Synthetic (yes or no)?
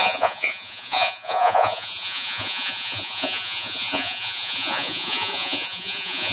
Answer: yes